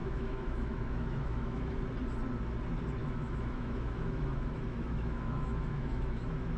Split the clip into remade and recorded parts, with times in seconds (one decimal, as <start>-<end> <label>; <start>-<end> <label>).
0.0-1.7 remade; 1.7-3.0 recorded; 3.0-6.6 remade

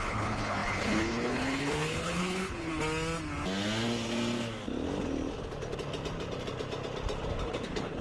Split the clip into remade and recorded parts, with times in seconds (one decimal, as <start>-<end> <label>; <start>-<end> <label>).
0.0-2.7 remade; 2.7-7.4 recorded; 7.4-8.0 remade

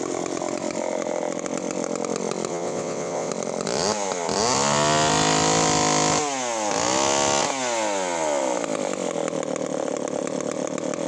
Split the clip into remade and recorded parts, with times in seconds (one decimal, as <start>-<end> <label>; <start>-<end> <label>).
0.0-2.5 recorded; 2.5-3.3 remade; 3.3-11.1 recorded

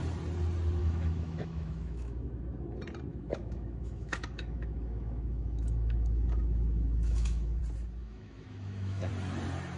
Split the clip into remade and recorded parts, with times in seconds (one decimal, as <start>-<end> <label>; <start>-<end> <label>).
0.0-0.8 recorded; 0.8-2.4 remade; 2.4-3.1 recorded; 3.1-7.6 remade; 7.6-8.0 recorded; 8.0-9.1 remade; 9.1-9.8 recorded

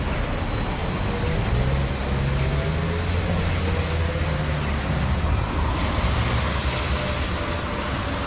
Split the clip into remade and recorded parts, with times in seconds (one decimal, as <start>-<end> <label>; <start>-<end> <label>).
0.0-8.3 recorded

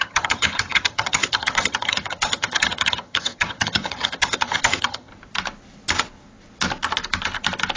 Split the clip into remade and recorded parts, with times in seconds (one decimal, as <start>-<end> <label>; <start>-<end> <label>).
0.0-5.1 remade; 5.1-7.8 recorded

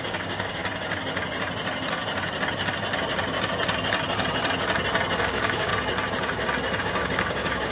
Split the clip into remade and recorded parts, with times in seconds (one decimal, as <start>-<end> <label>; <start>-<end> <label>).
0.0-0.6 remade; 0.6-5.2 recorded; 5.2-5.7 remade; 5.7-6.8 recorded; 6.8-7.7 remade

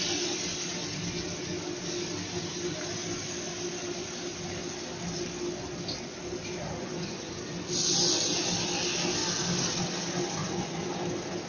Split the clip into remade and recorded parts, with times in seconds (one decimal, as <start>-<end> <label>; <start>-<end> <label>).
0.0-6.8 recorded; 6.8-7.4 remade; 7.4-10.4 recorded; 10.4-10.9 remade; 10.9-11.5 recorded